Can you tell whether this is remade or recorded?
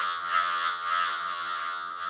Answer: remade